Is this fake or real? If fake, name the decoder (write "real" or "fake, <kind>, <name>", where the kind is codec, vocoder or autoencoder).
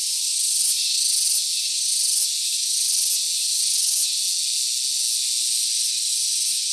real